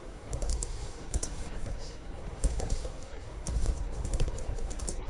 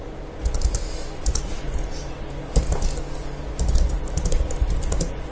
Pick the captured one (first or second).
second